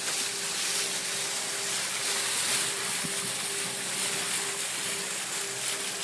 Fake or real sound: real